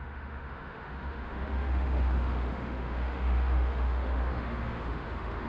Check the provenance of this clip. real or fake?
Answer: fake